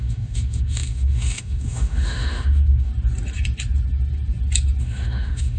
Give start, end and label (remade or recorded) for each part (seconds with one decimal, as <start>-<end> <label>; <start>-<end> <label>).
0.0-2.9 remade; 2.9-4.8 recorded; 4.8-5.6 remade